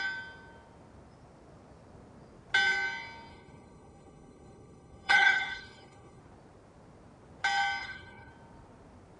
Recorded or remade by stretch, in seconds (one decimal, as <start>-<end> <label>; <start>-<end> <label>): 0.0-3.3 recorded; 3.3-6.2 remade; 6.2-7.8 recorded; 7.8-8.3 remade; 8.3-9.2 recorded

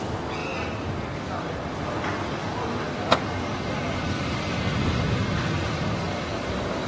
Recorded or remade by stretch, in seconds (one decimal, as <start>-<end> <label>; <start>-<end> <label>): 0.0-6.9 recorded

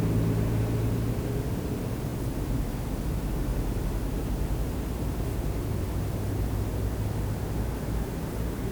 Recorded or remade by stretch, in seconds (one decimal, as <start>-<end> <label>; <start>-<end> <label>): 0.0-8.7 recorded

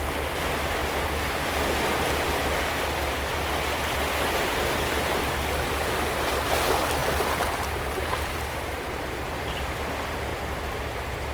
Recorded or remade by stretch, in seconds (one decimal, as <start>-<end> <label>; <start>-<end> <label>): 0.0-7.0 recorded; 7.0-9.7 remade; 9.7-11.3 recorded